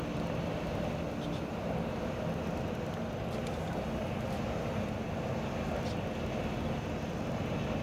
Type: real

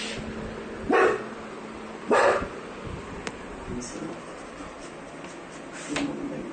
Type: real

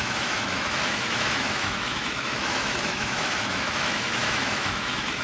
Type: fake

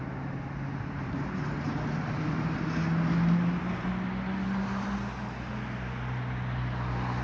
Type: real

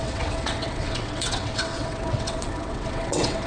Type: fake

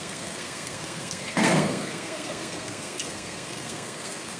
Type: fake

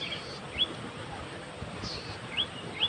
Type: real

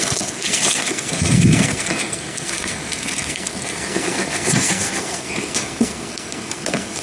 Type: fake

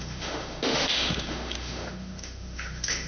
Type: fake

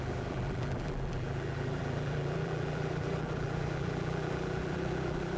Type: fake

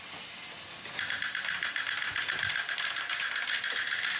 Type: real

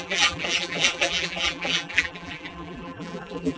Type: fake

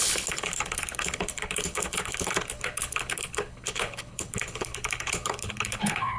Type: fake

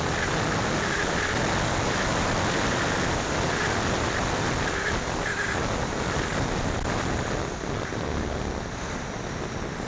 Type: real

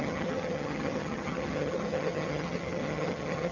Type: fake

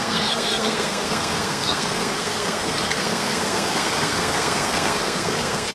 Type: fake